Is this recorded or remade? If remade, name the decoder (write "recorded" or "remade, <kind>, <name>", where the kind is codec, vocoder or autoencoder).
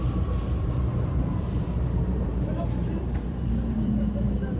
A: remade, vocoder, BigVGAN v2